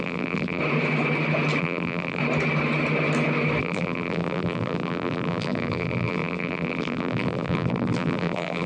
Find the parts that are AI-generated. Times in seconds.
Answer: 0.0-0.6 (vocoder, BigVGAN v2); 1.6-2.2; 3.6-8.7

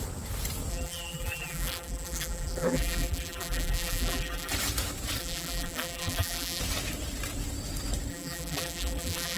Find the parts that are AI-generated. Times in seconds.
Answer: 0.7-4.5 (vocoder, BigVGAN v2); 5.2-6.6; 8.1-9.4

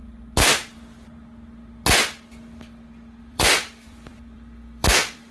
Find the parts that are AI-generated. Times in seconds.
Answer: 3.2-5.3 (vocoder, BigVGAN v2)

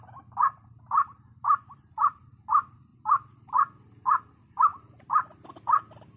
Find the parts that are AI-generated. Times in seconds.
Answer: 0.4-2.2 (vocoder, BigVGAN v2); 2.9-3.5; 4.7-5.5

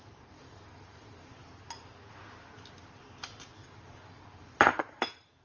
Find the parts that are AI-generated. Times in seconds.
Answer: 0.0-1.4 (vocoder, BigVGAN v2); 3.7-5.4

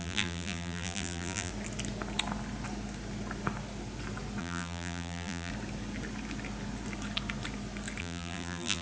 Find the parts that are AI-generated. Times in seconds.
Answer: 0.0-1.5 (vocoder, BigVGAN v2); 4.4-5.5; 8.0-8.8

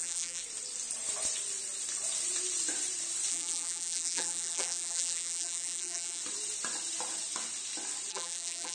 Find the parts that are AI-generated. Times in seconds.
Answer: 0.0-0.4 (vocoder, BigVGAN v2); 3.3-6.2; 8.1-8.7

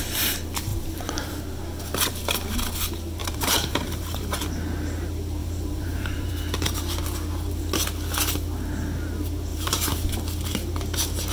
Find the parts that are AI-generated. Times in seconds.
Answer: 0.7-1.3 (vocoder, BigVGAN v2); 3.2-4.4; 5.4-6.3; 9.5-10.1